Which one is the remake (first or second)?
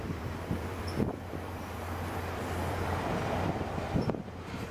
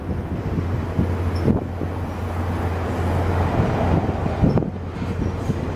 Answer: first